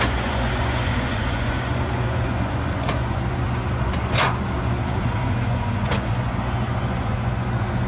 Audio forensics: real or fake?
fake